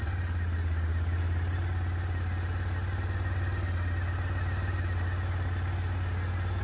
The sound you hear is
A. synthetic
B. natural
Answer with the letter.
B